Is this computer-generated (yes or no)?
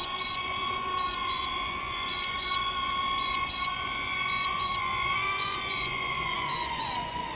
yes